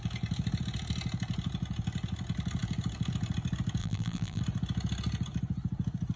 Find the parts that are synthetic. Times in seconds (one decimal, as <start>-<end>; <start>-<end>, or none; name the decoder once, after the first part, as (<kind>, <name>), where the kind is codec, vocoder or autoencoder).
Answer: 3.8-4.4 (vocoder, BigVGAN v2)